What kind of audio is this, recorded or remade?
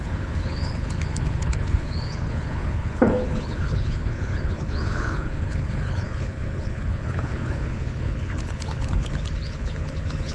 remade